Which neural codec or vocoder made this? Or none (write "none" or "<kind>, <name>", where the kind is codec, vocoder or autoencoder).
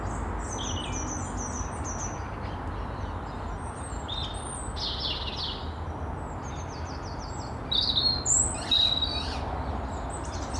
none